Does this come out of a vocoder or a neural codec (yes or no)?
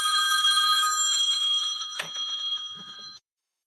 yes